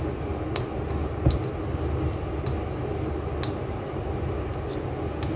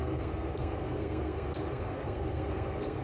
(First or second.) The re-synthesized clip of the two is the second